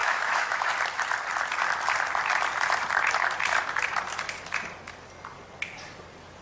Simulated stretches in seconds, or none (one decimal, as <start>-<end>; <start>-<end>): 0.0-0.7